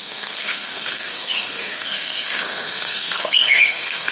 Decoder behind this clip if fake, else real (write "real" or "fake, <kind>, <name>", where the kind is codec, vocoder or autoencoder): fake, codec, SNAC